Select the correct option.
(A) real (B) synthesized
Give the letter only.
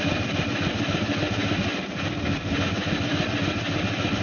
A